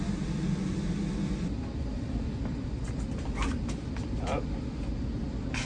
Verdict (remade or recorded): recorded